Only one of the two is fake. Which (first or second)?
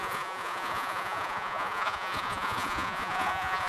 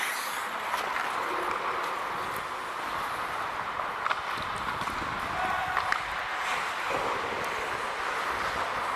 first